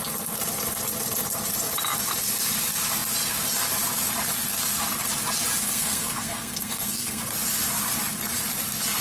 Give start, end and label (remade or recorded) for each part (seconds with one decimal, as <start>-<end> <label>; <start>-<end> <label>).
0.0-5.6 recorded; 5.6-7.2 remade; 7.2-9.0 recorded